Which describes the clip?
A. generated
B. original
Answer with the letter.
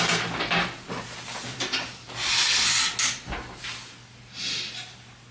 B